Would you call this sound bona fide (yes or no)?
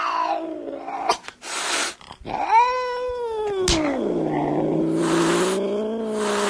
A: yes